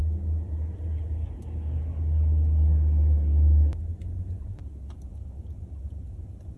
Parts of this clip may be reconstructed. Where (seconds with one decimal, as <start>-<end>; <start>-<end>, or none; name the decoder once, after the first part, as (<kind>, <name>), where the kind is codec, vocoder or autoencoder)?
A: none